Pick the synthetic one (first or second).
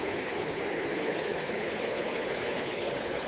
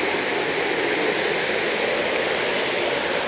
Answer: first